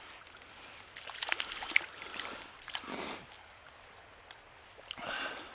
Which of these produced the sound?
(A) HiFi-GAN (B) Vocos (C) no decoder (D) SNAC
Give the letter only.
C